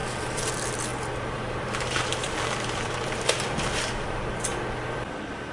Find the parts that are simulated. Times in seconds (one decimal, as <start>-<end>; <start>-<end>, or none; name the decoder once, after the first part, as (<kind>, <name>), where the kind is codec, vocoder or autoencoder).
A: 0.0-0.5 (vocoder, BigVGAN v2); 0.9-4.2